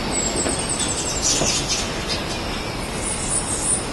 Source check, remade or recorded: recorded